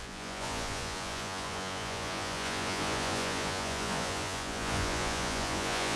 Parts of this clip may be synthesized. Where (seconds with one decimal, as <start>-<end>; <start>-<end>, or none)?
0.0-6.0